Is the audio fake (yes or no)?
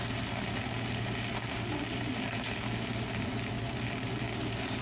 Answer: no